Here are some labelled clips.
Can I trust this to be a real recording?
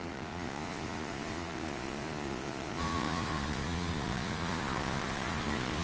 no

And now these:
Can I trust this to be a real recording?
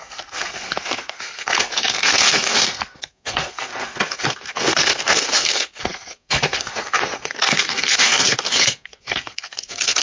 no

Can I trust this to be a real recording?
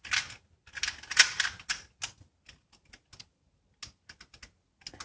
yes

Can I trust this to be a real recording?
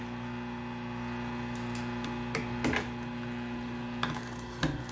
yes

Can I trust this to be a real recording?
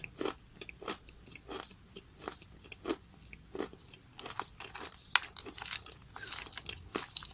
yes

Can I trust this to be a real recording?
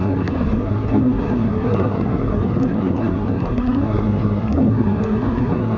no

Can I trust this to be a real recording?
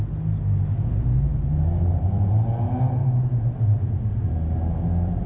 yes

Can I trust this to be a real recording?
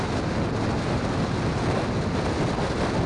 yes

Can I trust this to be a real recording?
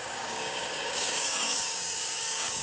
no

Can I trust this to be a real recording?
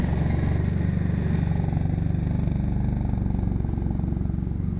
yes